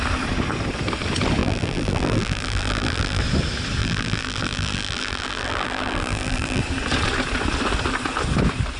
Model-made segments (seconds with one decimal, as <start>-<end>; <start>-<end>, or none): 1.4-3.2; 3.8-6.6